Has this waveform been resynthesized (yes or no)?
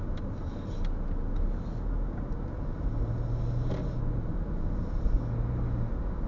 no